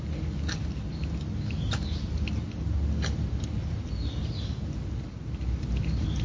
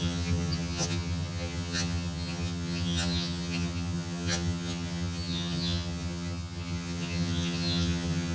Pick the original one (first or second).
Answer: first